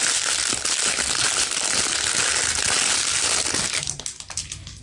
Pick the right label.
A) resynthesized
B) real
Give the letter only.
B